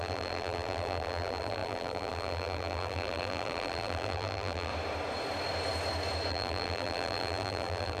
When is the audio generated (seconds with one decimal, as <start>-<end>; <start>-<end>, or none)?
0.0-4.7; 6.3-8.0